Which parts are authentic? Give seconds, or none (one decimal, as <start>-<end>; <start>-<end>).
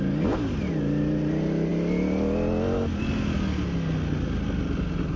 0.0-5.2